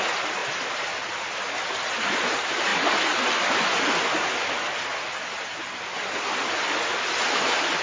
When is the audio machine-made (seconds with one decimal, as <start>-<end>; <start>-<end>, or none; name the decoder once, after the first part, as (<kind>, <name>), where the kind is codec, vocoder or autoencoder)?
none